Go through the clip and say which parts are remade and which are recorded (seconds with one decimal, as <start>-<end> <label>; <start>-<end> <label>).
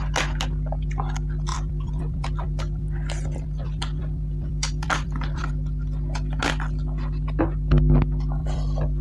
0.0-1.5 recorded; 1.5-5.5 remade; 5.5-8.4 recorded; 8.4-9.0 remade